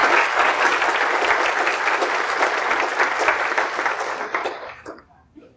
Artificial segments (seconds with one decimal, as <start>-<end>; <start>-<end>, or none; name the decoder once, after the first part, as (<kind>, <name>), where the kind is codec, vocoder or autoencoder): 0.0-0.8 (codec, DAC); 4.4-5.6